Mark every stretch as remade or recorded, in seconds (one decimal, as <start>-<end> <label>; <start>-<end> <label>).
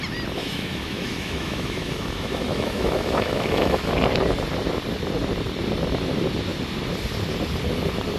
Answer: 0.0-0.4 recorded; 0.4-3.9 remade; 3.9-8.2 recorded